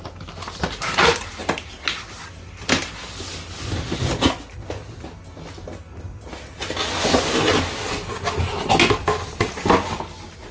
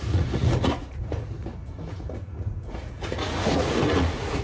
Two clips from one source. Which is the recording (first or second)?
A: first